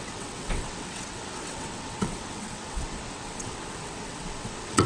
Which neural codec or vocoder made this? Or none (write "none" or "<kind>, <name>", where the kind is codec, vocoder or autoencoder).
vocoder, WaveNeXt